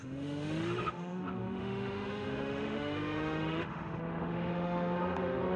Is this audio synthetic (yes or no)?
yes